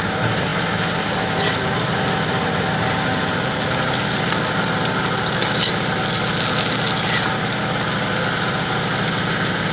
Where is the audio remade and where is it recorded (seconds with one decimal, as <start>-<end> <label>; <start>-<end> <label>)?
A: 0.0-9.7 recorded